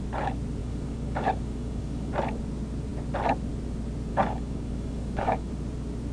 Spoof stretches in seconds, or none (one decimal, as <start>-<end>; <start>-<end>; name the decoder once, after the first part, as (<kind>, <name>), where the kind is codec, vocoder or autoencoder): 0.6-2.1 (codec, DAC); 4.1-5.5